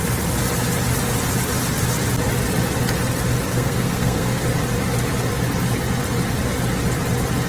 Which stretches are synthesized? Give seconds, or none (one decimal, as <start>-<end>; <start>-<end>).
3.5-4.4